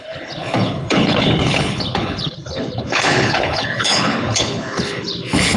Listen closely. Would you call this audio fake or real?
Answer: fake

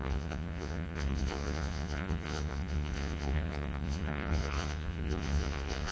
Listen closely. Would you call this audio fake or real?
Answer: fake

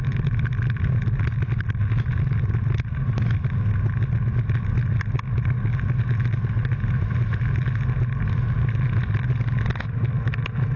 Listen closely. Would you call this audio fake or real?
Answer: real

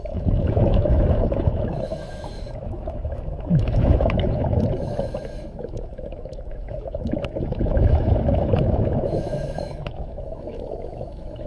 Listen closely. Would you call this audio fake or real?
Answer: fake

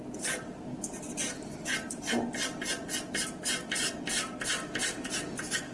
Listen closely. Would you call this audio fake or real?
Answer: real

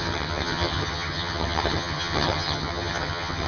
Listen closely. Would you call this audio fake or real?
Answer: fake